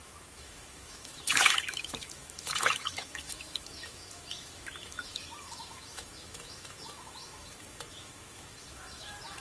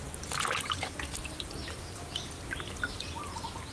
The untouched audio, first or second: second